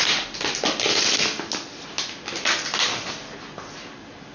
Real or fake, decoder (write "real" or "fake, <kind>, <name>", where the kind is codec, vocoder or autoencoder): real